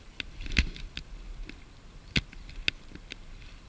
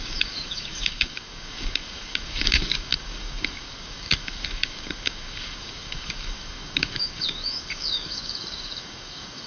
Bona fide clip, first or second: first